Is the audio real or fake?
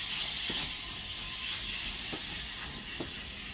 real